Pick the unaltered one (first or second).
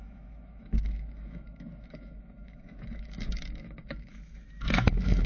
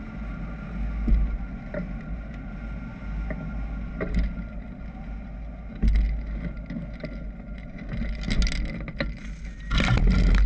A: second